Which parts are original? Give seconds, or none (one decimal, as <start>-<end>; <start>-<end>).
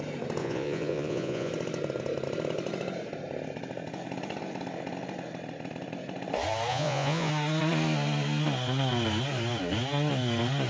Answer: 0.0-0.4; 1.5-6.7; 7.3-10.7